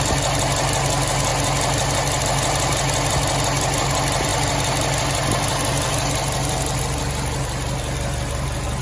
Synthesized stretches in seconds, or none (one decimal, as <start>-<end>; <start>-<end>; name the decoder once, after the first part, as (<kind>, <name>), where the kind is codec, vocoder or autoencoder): none